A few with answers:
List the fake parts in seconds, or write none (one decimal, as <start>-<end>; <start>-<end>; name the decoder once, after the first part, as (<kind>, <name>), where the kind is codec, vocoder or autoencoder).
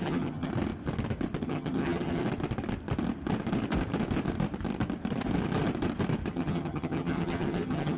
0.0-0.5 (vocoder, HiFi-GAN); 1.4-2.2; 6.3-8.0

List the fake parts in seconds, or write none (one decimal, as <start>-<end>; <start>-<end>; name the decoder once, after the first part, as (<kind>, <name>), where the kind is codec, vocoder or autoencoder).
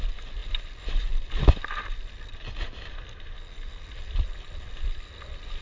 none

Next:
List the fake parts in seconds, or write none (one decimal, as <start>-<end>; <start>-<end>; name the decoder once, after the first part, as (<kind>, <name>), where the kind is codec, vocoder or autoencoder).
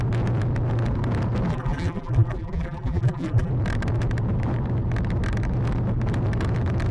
1.5-3.5 (vocoder, BigVGAN v2)